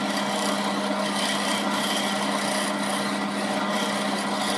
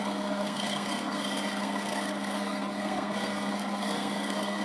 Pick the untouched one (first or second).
first